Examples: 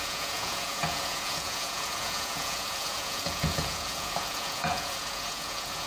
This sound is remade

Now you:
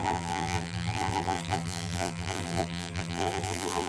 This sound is remade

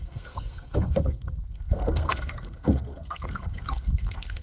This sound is remade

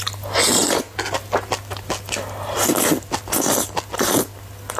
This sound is recorded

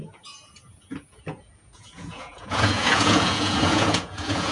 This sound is remade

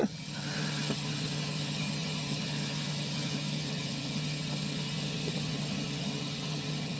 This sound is remade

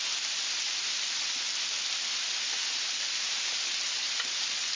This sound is recorded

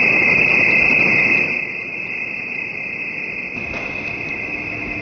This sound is recorded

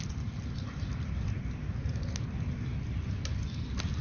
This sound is recorded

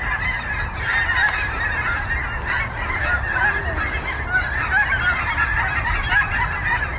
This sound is recorded